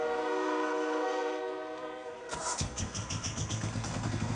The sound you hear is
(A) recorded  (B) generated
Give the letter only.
B